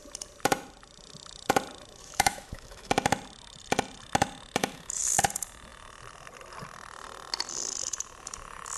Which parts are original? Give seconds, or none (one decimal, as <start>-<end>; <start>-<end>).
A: 0.0-2.0; 2.9-4.6; 5.2-8.8